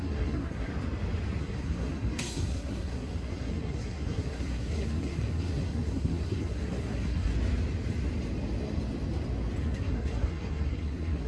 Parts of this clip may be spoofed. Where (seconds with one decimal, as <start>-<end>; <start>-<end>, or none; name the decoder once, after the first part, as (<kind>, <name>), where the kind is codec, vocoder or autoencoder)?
0.0-0.7 (codec, SNAC); 1.4-7.3; 9.6-11.3